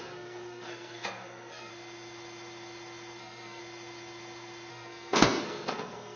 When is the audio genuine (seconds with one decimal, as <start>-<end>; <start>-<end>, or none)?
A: 1.7-3.2; 3.6-4.7